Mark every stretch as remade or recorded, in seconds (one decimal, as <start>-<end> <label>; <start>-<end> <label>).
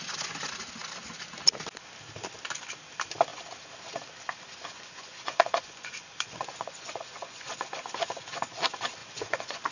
0.0-4.7 recorded; 4.7-7.5 remade; 7.5-9.0 recorded; 9.0-9.7 remade